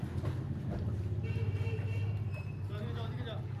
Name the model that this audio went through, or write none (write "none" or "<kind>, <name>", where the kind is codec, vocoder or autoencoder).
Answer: none